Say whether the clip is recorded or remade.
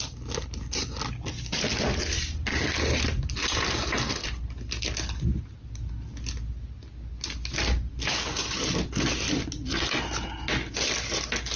recorded